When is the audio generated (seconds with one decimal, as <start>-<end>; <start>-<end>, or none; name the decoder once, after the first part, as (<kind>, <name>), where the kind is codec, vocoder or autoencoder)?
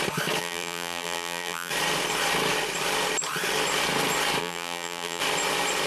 0.4-1.7 (vocoder, BigVGAN v2); 4.4-5.2